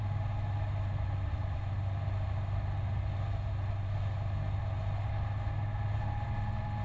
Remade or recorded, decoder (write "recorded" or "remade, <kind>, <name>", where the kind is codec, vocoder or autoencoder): recorded